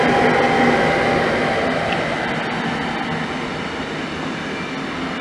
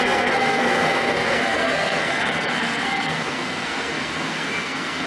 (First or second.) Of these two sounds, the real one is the first